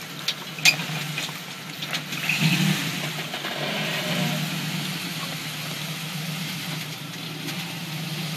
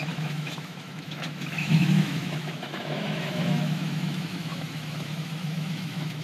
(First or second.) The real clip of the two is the first